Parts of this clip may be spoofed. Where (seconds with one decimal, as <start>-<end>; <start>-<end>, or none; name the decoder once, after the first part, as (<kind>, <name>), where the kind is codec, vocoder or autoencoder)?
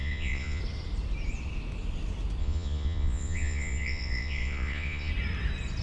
0.0-0.6 (vocoder, Vocos); 2.4-5.1